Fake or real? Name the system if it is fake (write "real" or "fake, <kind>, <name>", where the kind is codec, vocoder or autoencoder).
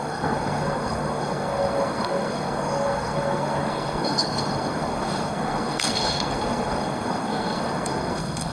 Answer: fake, codec, SNAC